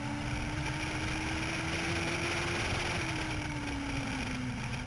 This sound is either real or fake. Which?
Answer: real